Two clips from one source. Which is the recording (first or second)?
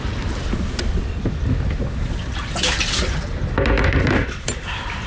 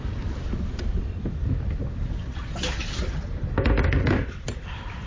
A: first